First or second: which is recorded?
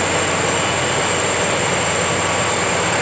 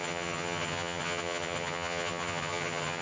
first